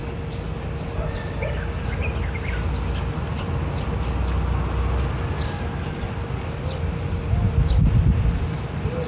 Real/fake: real